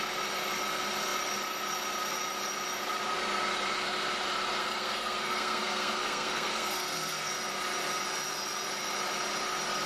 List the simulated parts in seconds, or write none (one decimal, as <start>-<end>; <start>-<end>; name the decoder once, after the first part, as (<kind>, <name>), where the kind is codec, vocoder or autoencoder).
4.6-7.3 (codec, SNAC)